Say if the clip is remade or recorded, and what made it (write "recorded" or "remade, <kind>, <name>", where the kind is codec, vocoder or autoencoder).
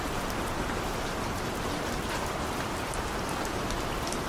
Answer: recorded